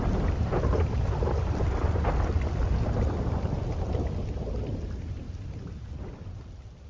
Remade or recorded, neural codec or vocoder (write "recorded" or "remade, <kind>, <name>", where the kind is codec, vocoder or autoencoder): recorded